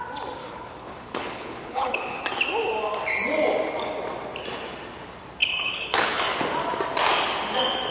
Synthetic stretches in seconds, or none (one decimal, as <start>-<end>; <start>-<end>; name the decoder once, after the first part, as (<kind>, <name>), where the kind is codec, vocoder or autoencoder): 0.4-2.4 (codec, HILCodec); 5.4-6.2